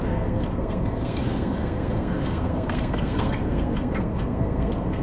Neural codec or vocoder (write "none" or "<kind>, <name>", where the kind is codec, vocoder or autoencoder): codec, SNAC